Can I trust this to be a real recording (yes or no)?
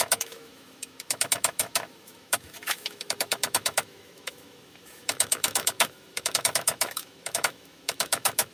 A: no